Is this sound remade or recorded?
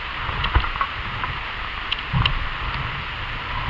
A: recorded